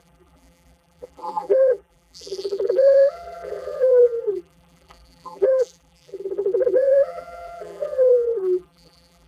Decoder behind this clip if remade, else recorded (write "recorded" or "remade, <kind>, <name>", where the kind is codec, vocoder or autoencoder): remade, vocoder, BigVGAN v2